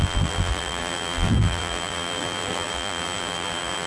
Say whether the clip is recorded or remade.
remade